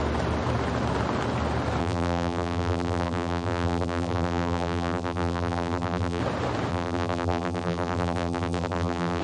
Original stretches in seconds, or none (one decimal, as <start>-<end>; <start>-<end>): 0.0-1.8; 6.2-6.7